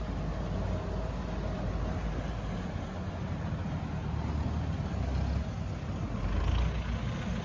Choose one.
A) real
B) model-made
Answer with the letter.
A